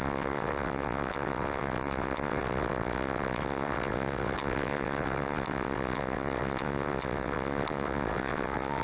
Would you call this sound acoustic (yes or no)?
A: no